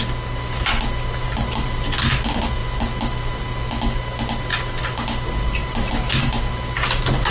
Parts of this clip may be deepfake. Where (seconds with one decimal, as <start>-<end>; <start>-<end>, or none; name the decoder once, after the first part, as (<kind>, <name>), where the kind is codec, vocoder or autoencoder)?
none